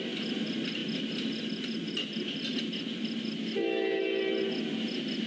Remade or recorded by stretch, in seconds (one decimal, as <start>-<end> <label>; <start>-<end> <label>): 0.0-5.3 recorded